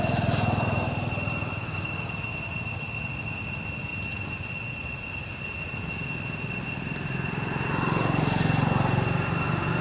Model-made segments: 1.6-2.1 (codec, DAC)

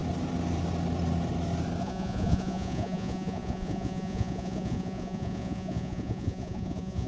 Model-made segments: 1.8-7.1 (vocoder, Vocos)